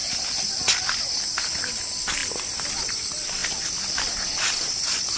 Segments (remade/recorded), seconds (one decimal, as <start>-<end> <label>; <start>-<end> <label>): 0.0-5.2 recorded